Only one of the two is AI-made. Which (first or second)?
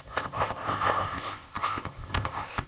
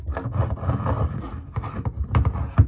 first